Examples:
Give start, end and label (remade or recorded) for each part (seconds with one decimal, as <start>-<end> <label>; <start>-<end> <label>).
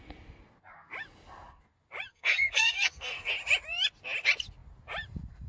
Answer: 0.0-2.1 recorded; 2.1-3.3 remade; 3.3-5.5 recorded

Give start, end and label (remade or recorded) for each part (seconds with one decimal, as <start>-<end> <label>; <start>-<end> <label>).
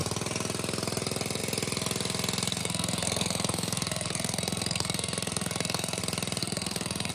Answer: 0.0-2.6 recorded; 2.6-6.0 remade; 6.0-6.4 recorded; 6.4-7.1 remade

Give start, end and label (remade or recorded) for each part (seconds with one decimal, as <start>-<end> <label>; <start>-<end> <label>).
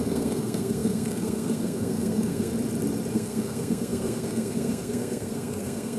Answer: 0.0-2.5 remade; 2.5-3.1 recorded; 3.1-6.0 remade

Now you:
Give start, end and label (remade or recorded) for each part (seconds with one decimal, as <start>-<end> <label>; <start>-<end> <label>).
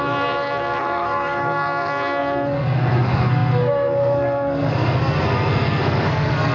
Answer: 0.0-6.5 remade